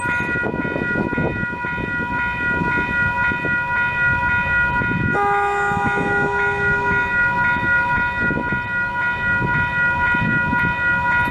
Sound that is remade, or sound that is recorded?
recorded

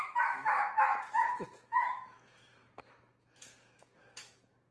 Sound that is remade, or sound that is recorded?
remade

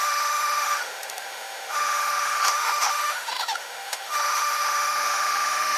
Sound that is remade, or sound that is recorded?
remade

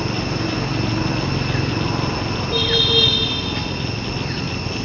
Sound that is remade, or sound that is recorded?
recorded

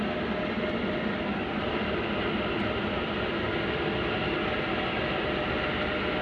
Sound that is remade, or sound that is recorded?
recorded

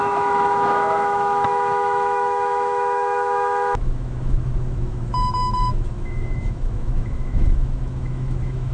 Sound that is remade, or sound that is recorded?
remade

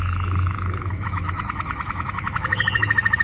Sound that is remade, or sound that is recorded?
remade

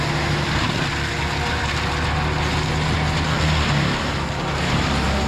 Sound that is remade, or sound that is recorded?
recorded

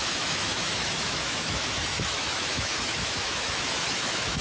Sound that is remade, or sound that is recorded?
remade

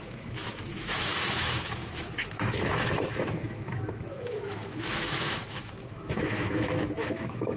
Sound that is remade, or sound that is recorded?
remade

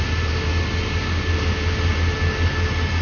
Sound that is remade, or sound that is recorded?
recorded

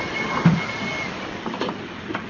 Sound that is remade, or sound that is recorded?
recorded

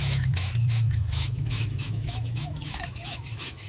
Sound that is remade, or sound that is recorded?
remade